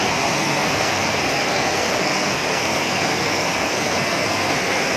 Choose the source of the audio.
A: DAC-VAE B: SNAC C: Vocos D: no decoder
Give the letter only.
B